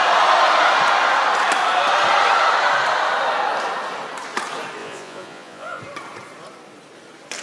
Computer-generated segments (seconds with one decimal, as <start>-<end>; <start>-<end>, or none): 4.8-5.8